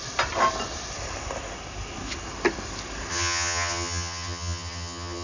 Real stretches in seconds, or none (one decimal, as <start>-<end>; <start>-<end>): 0.0-3.1